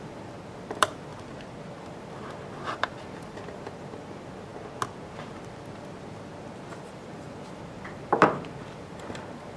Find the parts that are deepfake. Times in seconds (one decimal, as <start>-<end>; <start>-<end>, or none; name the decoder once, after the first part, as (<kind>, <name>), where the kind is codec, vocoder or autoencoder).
0.0-1.1 (vocoder, BigVGAN v2); 1.7-4.5; 6.8-9.6